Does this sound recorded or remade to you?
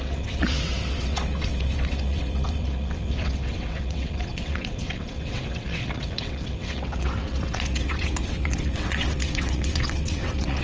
remade